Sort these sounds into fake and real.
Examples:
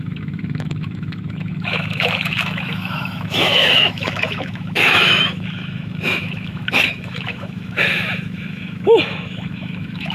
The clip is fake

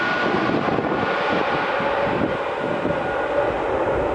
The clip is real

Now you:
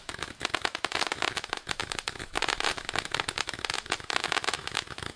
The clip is fake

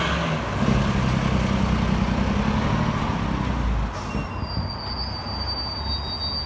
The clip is real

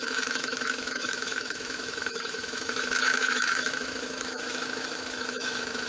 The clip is fake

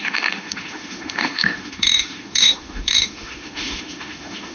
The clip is fake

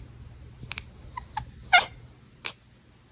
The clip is real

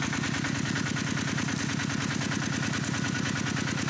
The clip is real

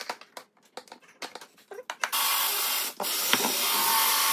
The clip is real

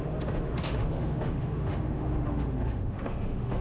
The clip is fake